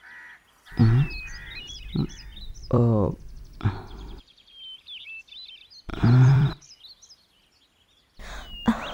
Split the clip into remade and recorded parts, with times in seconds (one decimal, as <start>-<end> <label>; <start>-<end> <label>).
0.0-0.8 recorded; 0.8-3.1 remade; 3.1-5.9 recorded; 5.9-6.8 remade; 6.8-8.9 recorded